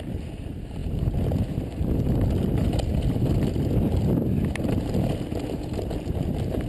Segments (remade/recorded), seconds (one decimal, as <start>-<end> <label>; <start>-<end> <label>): 0.0-6.7 recorded